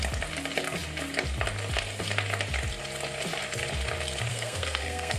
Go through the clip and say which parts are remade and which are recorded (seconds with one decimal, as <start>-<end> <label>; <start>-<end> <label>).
0.0-4.3 recorded; 4.3-5.2 remade